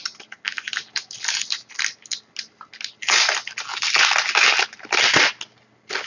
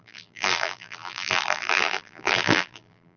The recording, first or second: first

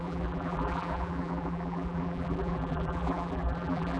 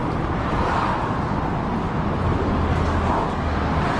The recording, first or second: second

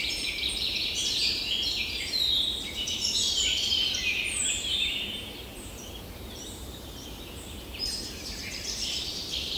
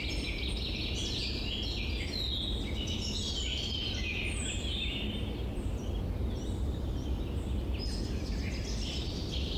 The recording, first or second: second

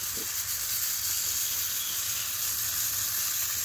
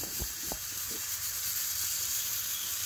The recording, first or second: first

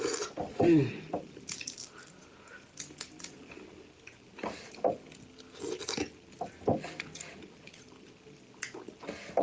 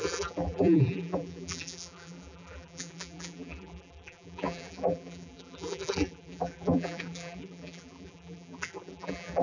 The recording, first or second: first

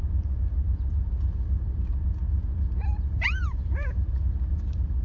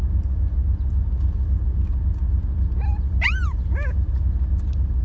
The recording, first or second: second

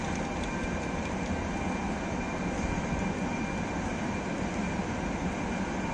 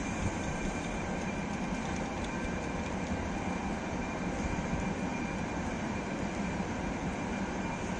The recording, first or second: first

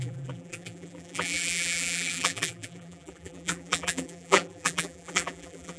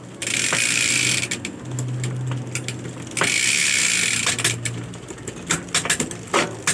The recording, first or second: second